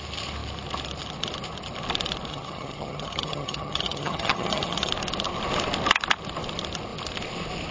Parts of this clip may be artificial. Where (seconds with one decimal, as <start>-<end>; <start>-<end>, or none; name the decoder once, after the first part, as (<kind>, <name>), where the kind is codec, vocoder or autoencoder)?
2.3-4.9 (vocoder, HiFi-GAN)